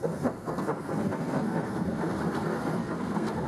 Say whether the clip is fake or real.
fake